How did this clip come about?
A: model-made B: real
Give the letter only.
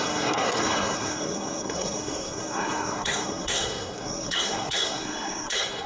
A